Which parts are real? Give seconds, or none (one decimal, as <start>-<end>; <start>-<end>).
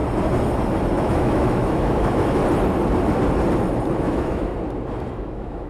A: 0.0-1.0; 2.4-4.0; 4.5-5.1